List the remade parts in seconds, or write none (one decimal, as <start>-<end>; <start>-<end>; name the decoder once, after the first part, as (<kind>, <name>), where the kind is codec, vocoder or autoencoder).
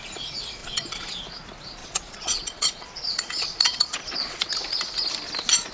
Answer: 0.6-1.2 (vocoder, Vocos); 1.8-4.5